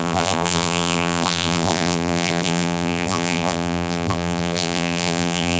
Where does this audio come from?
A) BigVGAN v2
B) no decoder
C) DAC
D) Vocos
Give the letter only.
A